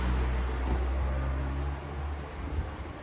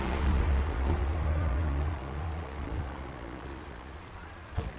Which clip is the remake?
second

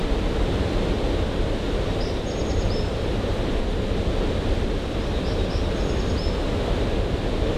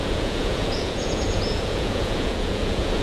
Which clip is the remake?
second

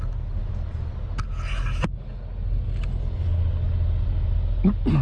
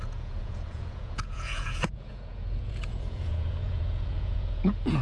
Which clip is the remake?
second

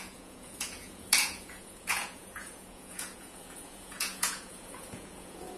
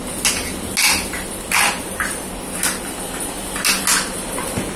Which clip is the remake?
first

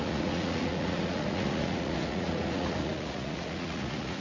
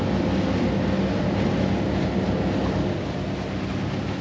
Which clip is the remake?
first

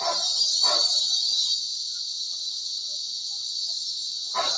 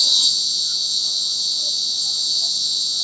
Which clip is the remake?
second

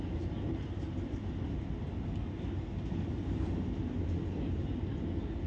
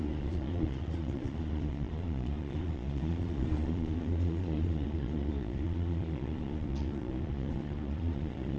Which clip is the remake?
second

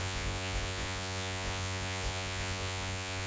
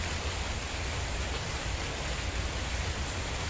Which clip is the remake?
first